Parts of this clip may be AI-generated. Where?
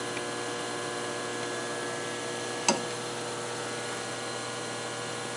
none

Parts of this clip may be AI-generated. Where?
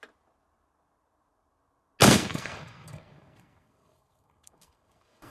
2.0-5.3 (codec, SNAC)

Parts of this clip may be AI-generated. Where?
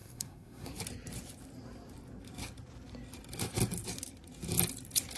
0.0-0.8 (codec, SNAC)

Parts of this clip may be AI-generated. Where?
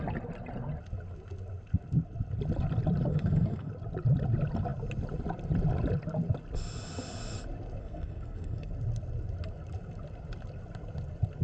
3.1-3.7 (codec, SNAC); 7.8-8.7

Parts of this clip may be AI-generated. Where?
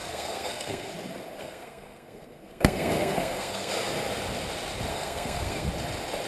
0.0-0.9 (codec, SNAC); 1.4-3.7; 4.9-5.7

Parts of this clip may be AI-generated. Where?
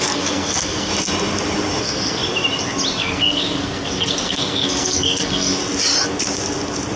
0.0-0.9 (codec, SNAC); 1.8-2.2; 3.0-5.6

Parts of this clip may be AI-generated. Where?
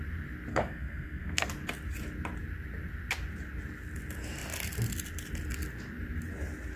0.5-1.5 (codec, SNAC)